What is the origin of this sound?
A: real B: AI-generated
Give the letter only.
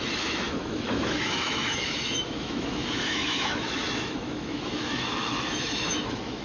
B